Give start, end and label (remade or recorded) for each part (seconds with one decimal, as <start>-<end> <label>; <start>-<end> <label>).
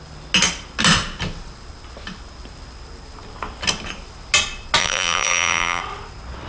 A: 0.0-4.8 recorded; 4.8-5.8 remade; 5.8-6.5 recorded